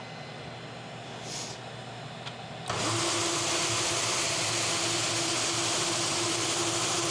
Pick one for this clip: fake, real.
real